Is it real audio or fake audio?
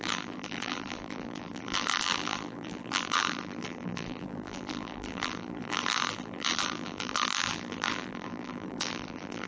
fake